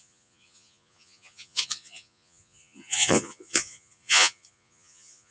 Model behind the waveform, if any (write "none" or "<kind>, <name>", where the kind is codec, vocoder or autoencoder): vocoder, Vocos